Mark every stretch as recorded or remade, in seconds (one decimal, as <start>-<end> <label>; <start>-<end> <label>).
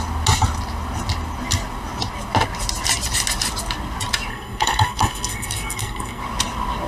0.0-4.3 recorded; 4.3-6.2 remade; 6.2-6.9 recorded